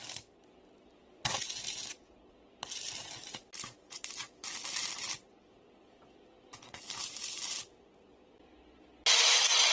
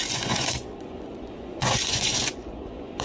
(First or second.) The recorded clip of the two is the first